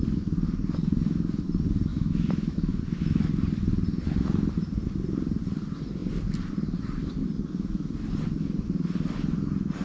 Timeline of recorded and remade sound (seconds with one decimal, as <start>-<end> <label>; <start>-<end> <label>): 0.0-1.9 recorded; 1.9-2.8 remade; 2.8-9.8 recorded